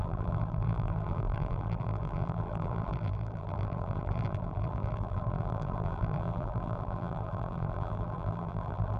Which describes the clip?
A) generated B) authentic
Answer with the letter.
A